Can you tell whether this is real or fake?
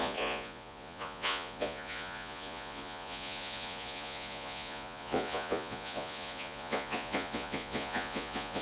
fake